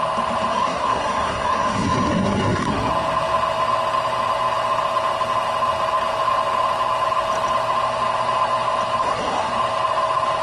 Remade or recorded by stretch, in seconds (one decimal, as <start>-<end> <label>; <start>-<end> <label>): 0.0-0.5 recorded; 0.5-2.9 remade; 2.9-9.0 recorded; 9.0-9.5 remade; 9.5-10.4 recorded